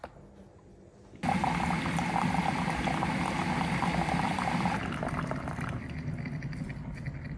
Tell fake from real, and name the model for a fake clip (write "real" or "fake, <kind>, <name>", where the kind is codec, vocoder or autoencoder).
real